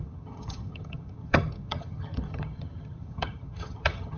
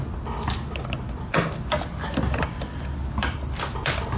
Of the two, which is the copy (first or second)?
first